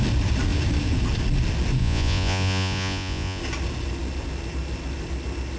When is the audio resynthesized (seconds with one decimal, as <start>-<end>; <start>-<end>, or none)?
1.8-3.4